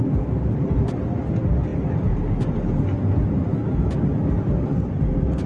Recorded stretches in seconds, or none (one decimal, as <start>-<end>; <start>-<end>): 0.0-5.5